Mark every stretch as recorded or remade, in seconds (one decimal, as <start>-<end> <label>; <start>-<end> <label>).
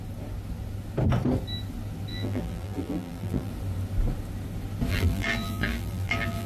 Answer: 0.0-2.1 recorded; 2.1-3.5 remade; 3.5-4.9 recorded; 4.9-6.5 remade